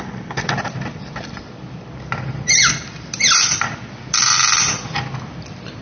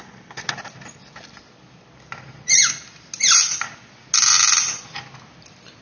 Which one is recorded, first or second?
second